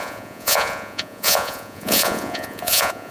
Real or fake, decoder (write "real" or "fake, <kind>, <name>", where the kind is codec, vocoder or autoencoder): fake, vocoder, Vocos